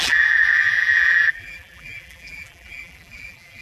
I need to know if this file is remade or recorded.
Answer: remade